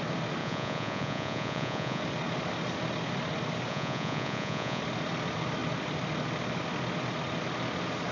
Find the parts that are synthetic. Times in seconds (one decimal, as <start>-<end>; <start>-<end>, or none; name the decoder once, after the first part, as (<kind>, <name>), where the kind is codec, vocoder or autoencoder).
0.4-2.0 (vocoder, Vocos); 3.7-4.8